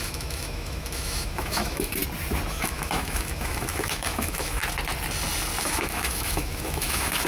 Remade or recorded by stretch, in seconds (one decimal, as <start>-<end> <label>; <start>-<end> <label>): 0.0-2.0 remade; 2.0-2.5 recorded; 2.5-4.6 remade; 4.6-5.6 recorded; 5.6-7.3 remade